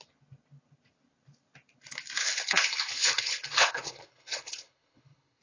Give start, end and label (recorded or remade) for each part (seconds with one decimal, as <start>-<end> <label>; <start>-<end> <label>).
0.0-2.2 recorded; 2.2-5.4 remade